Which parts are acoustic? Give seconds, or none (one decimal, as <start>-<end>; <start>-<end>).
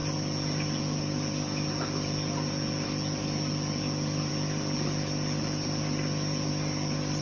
0.0-7.2